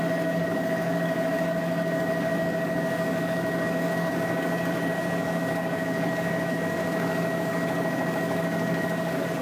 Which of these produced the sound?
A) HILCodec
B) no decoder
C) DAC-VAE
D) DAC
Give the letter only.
D